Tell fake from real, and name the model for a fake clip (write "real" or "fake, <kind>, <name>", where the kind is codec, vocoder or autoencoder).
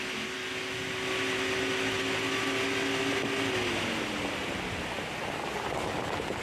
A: real